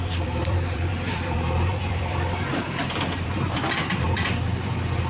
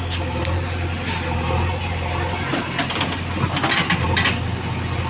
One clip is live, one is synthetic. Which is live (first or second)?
second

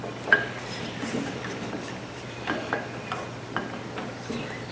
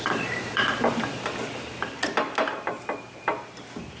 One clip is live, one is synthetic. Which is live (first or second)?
first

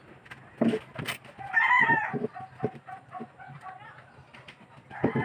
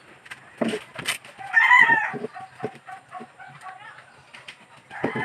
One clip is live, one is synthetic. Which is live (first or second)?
first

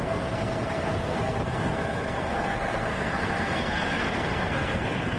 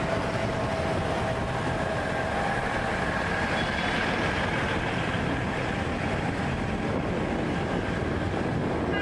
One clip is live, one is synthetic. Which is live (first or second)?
second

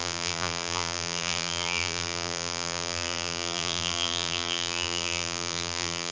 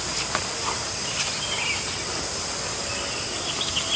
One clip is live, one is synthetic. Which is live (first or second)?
second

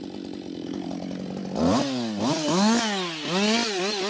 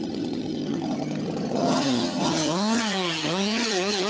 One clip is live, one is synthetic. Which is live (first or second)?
first